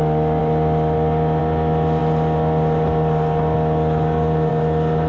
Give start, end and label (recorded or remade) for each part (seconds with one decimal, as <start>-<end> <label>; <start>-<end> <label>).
0.0-5.1 recorded